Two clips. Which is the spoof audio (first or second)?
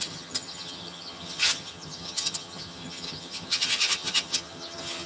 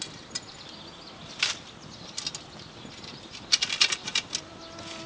first